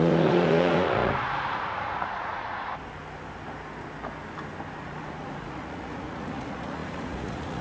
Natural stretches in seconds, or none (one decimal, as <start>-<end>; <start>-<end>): 2.7-4.8